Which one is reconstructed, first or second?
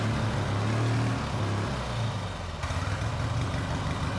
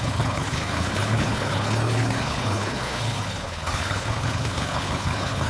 second